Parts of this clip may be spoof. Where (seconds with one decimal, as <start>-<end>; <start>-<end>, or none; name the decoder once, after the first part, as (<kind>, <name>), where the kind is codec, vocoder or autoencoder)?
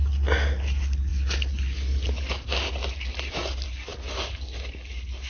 none